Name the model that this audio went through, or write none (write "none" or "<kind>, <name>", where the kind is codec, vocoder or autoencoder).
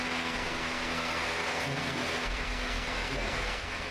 codec, SNAC